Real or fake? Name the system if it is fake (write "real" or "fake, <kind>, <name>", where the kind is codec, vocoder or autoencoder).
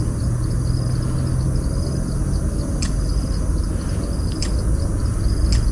real